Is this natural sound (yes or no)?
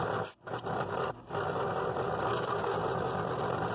yes